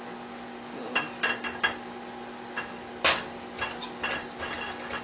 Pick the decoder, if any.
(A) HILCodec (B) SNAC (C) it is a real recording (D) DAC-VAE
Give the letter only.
C